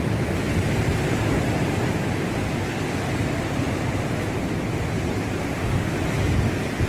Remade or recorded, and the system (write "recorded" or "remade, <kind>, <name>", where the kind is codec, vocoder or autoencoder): recorded